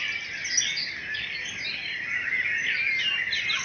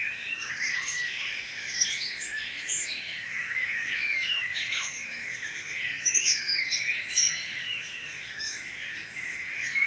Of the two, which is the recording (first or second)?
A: first